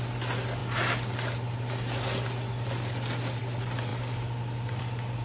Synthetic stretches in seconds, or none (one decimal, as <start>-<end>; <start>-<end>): none